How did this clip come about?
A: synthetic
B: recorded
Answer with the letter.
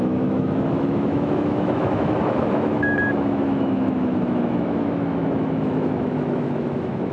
A